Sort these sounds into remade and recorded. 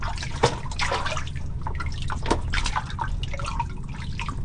recorded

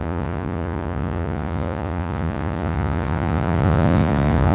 remade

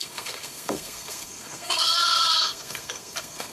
remade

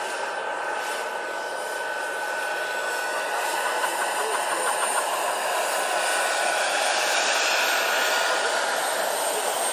recorded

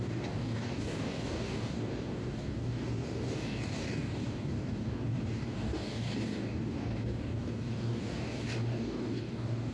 remade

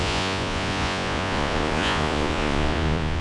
remade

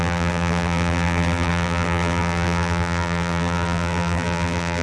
remade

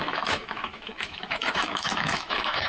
remade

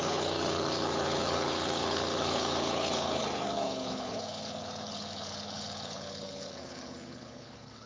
remade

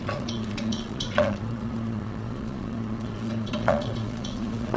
remade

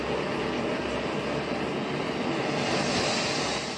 recorded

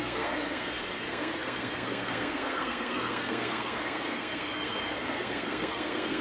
remade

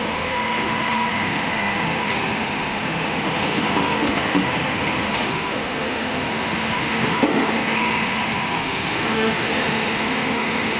remade